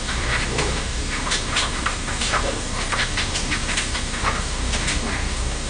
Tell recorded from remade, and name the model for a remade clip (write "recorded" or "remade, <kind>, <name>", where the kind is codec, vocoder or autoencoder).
remade, codec, DAC